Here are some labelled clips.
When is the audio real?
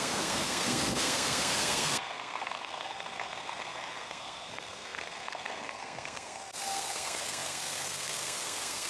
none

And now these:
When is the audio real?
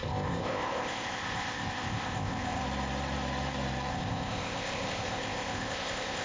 2.6-3.9